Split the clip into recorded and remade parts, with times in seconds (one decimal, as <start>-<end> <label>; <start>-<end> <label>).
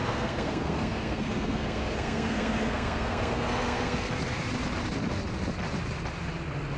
0.0-4.1 remade; 4.1-6.8 recorded